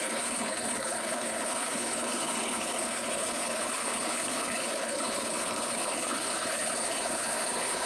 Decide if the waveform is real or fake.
fake